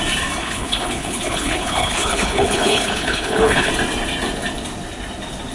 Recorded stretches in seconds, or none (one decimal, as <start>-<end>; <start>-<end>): 0.0-0.4; 3.7-5.5

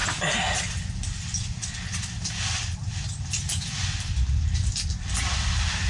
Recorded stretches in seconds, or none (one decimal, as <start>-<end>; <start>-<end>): 0.0-5.9

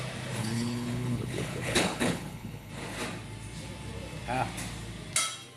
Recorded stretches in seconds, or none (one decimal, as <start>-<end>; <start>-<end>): 0.0-0.4; 2.7-5.6

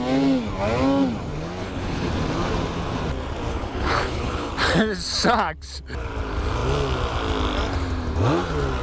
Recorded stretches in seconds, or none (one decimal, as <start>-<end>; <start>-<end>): 0.0-1.6; 2.1-3.5; 4.5-8.8

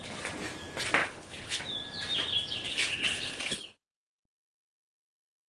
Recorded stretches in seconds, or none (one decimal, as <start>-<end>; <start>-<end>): 0.0-1.0; 1.6-2.7

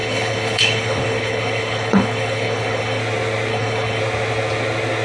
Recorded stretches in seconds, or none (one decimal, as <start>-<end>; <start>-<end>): 3.0-3.5; 4.0-5.0

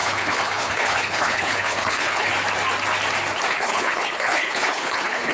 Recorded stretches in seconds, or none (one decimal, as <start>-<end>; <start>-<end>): 2.3-3.5

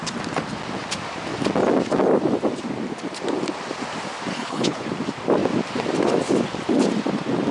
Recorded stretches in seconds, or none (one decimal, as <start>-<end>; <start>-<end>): 0.0-4.3; 4.9-7.5